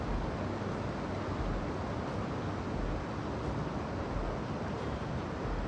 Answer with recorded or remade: recorded